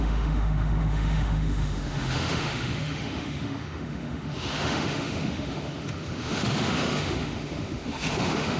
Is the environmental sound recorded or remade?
remade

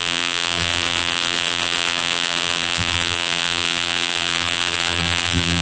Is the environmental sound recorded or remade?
remade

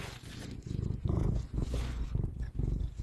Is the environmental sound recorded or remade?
remade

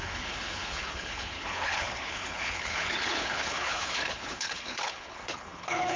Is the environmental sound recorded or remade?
remade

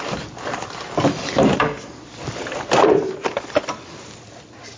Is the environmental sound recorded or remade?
remade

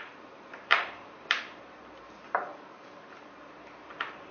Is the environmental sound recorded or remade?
remade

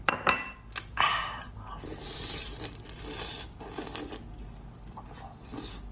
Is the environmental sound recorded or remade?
recorded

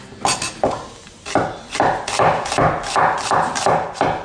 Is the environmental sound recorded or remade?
recorded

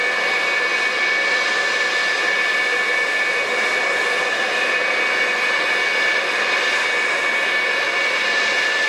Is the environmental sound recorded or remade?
recorded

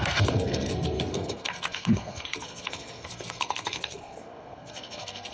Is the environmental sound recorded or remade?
remade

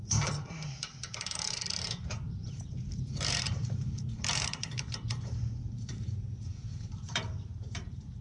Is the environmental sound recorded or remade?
remade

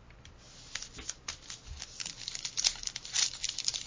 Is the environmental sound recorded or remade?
remade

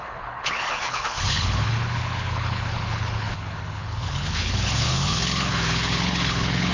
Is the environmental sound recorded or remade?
remade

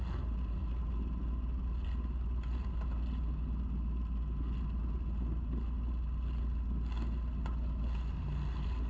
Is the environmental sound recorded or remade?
recorded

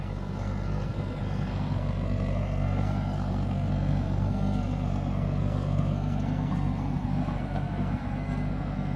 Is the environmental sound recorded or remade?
remade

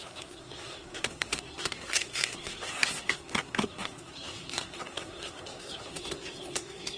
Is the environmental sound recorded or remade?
remade